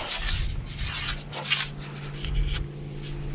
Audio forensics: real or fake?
real